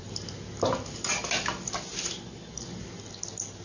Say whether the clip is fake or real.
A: real